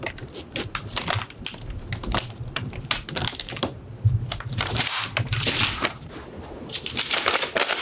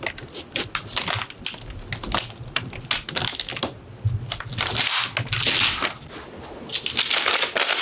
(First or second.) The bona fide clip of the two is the second